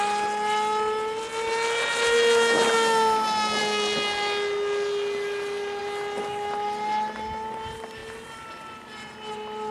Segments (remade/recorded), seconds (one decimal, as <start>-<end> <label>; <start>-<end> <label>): 0.0-9.7 recorded